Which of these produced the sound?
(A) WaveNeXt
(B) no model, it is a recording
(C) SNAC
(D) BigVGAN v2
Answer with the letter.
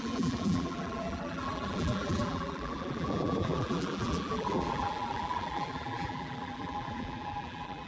D